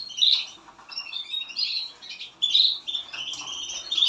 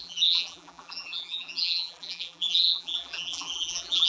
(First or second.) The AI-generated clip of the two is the second